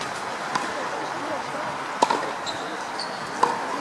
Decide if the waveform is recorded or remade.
recorded